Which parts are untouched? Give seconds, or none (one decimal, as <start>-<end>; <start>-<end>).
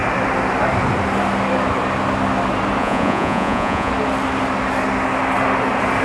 0.0-2.8; 3.9-6.0